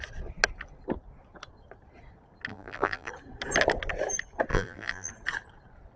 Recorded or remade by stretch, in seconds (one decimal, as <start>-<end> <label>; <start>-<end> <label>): 0.0-2.5 recorded; 2.5-3.1 remade; 3.1-4.5 recorded; 4.5-5.1 remade; 5.1-6.0 recorded